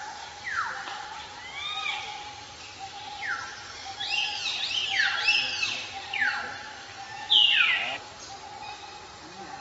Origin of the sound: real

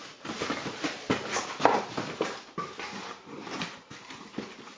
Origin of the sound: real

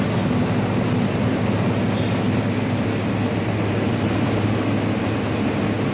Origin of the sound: real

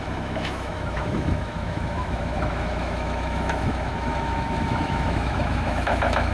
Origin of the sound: fake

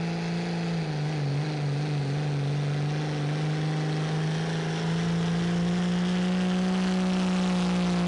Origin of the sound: real